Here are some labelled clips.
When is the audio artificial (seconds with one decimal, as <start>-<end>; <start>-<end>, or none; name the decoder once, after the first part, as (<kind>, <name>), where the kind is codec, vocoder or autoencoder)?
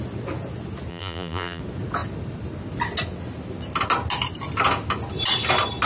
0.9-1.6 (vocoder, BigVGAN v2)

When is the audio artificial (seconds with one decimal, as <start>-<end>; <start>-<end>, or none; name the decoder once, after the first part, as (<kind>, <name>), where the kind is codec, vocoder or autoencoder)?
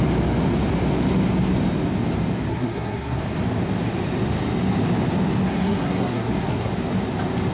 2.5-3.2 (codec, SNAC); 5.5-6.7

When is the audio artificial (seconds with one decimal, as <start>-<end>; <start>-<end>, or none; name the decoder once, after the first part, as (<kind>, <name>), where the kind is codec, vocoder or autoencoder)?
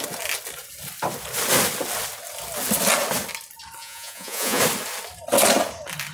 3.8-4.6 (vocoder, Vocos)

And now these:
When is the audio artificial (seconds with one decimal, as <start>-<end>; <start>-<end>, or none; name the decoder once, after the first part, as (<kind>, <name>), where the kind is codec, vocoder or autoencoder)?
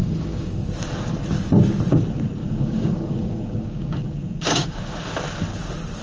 0.0-0.7 (codec, DAC); 2.4-5.2